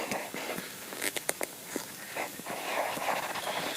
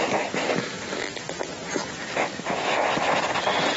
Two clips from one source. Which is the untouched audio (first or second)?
second